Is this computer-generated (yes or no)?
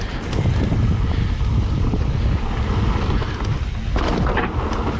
no